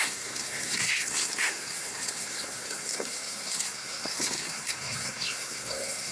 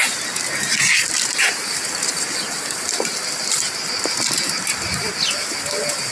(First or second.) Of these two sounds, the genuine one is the second